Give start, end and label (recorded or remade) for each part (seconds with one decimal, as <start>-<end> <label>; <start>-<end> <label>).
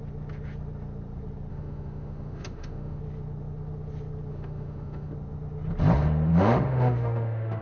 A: 0.0-1.5 recorded; 1.5-3.0 remade; 3.0-4.3 recorded; 4.3-5.1 remade; 5.1-6.3 recorded; 6.3-7.6 remade